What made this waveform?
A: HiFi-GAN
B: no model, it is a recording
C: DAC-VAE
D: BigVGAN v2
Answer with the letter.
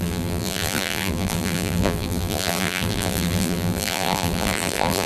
D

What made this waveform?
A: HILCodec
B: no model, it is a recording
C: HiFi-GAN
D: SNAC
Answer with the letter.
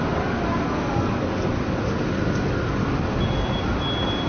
B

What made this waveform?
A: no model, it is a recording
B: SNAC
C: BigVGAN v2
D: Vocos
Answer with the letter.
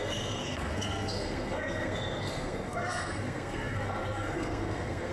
B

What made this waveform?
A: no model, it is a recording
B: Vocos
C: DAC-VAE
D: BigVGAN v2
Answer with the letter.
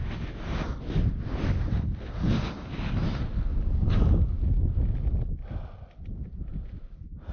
A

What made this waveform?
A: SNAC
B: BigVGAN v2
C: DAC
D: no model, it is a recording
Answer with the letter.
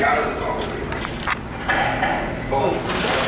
D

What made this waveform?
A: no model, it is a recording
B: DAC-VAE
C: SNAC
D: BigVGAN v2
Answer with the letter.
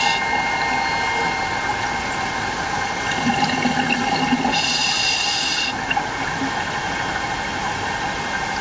A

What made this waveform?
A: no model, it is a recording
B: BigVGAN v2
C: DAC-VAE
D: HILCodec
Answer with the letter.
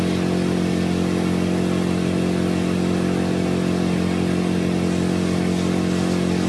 A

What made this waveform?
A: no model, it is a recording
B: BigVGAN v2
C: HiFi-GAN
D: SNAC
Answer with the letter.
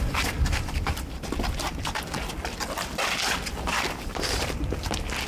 B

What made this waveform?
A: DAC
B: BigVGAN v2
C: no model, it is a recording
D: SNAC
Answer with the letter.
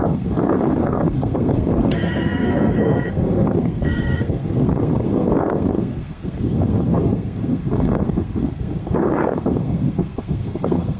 D